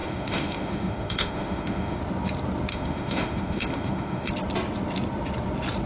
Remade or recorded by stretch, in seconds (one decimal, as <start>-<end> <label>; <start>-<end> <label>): 0.0-2.0 remade; 2.0-2.7 recorded; 2.7-4.3 remade; 4.3-5.9 recorded